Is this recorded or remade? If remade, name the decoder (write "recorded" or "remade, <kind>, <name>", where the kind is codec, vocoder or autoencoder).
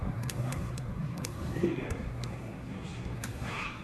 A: remade, codec, SNAC